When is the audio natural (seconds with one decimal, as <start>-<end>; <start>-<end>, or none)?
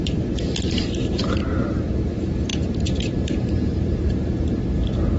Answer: 0.0-2.5; 4.4-5.2